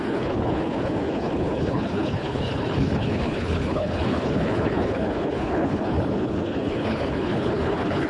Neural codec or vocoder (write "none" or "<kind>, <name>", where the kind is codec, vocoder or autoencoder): codec, HILCodec